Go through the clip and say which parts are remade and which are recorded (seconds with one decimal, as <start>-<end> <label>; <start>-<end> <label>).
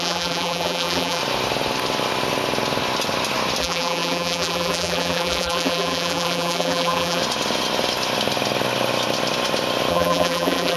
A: 0.0-1.2 remade; 1.2-3.6 recorded; 3.6-7.2 remade; 7.2-9.9 recorded; 9.9-10.8 remade